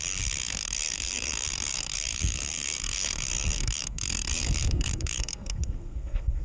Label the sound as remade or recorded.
remade